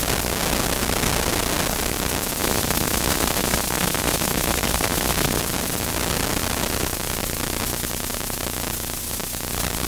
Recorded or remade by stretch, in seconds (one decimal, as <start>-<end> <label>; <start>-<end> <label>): 0.0-2.4 recorded; 2.4-5.4 remade; 5.4-9.9 recorded